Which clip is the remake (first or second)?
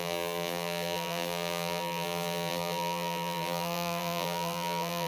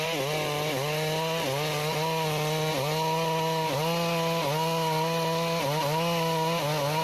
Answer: first